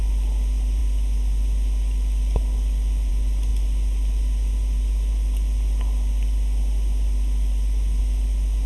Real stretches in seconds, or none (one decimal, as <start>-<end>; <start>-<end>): 0.0-8.7